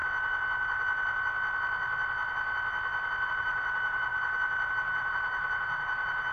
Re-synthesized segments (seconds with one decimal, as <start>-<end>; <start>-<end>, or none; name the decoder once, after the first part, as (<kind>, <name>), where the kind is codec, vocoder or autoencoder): 3.3-4.1 (vocoder, BigVGAN v2); 4.7-6.3